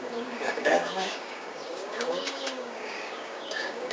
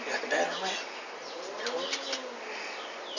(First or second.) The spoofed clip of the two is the first